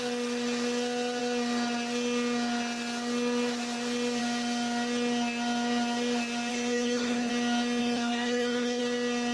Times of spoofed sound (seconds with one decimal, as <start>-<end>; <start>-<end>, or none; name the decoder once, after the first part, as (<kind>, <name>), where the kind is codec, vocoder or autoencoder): 6.5-7.3 (codec, SNAC); 7.8-8.8